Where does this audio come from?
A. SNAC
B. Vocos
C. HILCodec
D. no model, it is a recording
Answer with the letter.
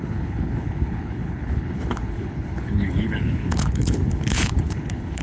C